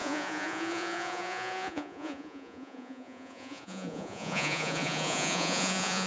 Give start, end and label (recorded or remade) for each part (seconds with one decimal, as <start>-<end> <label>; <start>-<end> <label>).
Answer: 0.0-6.1 remade